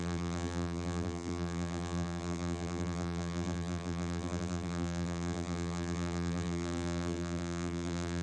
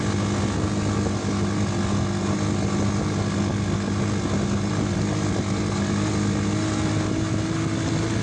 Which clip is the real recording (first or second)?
second